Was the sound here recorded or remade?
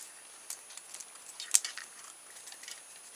recorded